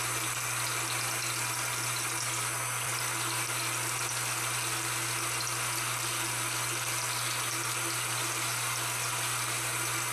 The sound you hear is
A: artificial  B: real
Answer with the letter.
B